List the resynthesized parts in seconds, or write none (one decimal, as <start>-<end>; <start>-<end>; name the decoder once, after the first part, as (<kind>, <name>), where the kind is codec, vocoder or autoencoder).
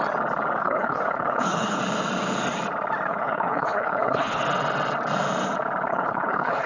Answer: 0.6-1.8 (codec, HILCodec); 3.1-4.4; 5.9-6.7